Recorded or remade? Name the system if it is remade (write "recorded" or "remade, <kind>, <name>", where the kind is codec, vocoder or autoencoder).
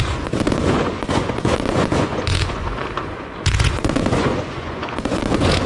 remade, vocoder, Vocos